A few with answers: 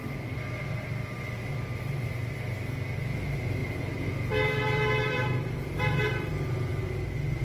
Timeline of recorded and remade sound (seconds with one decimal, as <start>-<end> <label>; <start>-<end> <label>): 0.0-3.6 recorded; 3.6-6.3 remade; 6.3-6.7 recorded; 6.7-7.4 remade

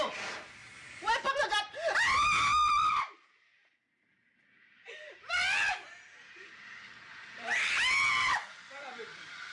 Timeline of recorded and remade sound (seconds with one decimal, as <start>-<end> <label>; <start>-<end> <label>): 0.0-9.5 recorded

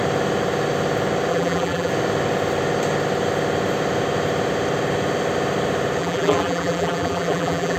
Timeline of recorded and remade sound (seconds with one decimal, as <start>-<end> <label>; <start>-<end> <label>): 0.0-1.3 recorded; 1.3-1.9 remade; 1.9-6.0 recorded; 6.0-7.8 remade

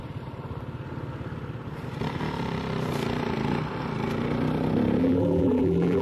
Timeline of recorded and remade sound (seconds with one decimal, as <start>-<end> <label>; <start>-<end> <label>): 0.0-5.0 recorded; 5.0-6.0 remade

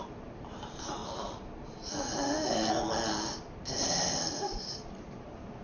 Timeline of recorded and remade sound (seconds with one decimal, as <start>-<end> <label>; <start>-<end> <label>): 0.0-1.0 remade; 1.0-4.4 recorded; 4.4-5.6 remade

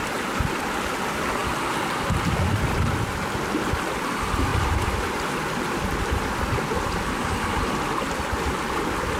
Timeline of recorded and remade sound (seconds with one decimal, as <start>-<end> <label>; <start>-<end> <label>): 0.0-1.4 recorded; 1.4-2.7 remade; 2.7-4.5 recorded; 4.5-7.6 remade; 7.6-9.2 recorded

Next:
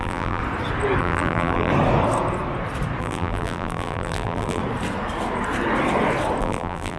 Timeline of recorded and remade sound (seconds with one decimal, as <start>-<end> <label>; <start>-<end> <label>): 0.0-0.4 remade; 0.4-1.0 recorded; 1.0-1.7 remade; 1.7-3.0 recorded; 3.0-4.6 remade; 4.6-6.4 recorded; 6.4-7.0 remade